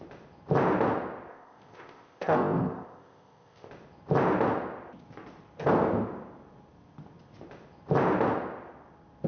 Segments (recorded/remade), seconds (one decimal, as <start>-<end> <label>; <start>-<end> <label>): 0.0-1.3 recorded; 1.3-3.7 remade; 3.7-9.3 recorded